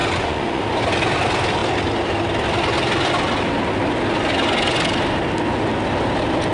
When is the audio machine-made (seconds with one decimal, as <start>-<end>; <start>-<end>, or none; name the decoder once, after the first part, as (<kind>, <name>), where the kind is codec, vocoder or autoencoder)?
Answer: 0.0-0.6 (vocoder, Vocos)